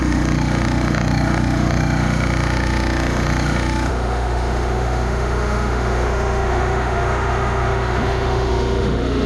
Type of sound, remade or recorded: remade